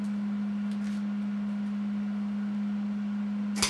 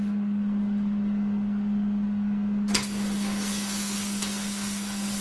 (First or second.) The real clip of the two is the first